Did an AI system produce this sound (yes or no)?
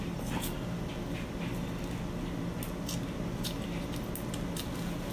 no